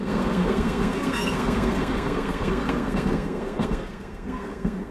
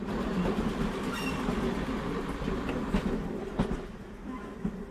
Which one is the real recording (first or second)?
second